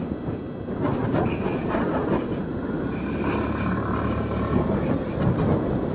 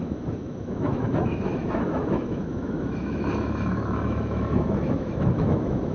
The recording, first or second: first